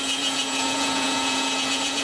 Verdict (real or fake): fake